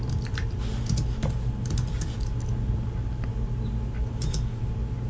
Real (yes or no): yes